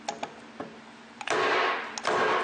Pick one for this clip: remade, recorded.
recorded